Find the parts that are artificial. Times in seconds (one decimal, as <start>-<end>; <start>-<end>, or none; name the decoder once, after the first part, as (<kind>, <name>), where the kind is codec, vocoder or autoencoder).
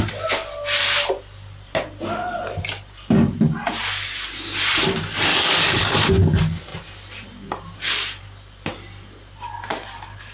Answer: 5.3-6.1 (codec, DAC)